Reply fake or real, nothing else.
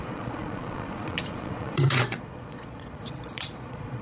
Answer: fake